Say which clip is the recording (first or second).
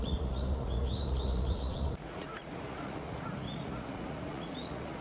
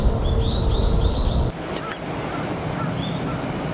second